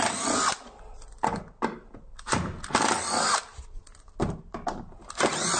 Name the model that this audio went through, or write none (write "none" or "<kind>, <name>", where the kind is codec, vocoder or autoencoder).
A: none